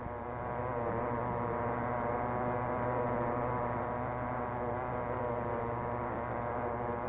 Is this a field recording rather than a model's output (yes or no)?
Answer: yes